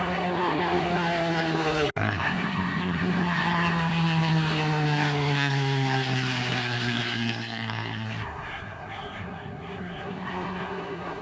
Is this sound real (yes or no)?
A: no